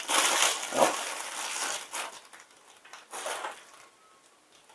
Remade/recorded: recorded